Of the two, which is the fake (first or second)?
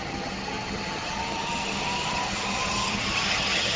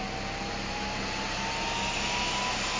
first